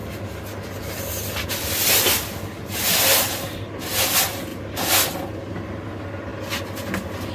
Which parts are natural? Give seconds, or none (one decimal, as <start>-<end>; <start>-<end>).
0.0-4.5; 5.1-7.3